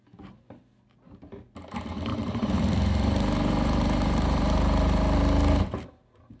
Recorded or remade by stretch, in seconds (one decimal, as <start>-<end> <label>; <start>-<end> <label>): 0.0-2.1 recorded; 2.1-4.9 remade; 4.9-6.4 recorded

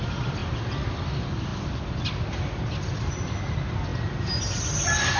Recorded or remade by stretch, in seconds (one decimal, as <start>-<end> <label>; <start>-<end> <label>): 0.0-5.2 recorded

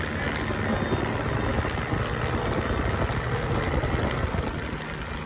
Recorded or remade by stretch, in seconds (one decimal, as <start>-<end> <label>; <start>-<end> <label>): 0.0-5.3 recorded

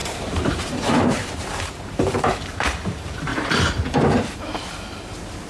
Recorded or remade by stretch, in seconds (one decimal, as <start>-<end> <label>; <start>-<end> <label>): 0.0-3.3 remade; 3.3-5.5 recorded

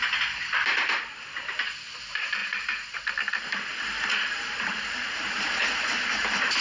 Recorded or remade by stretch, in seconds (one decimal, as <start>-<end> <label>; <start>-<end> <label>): 0.0-6.6 recorded

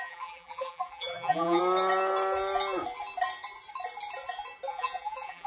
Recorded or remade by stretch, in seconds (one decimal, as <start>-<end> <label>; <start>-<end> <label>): 0.0-1.6 remade; 1.6-4.7 recorded; 4.7-5.5 remade

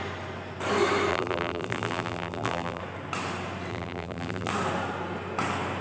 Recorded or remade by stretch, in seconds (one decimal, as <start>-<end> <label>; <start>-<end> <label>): 0.0-1.1 recorded; 1.1-2.8 remade; 2.8-3.7 recorded; 3.7-4.5 remade; 4.5-5.8 recorded